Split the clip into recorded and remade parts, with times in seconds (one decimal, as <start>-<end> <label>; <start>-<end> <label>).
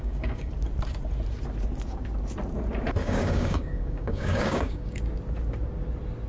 0.0-0.5 remade; 0.5-3.0 recorded; 3.0-5.0 remade; 5.0-6.3 recorded